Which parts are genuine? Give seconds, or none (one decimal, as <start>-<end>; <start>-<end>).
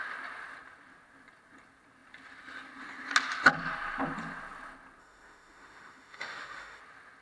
0.0-5.0; 6.8-7.2